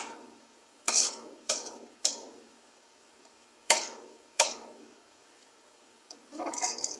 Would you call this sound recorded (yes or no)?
no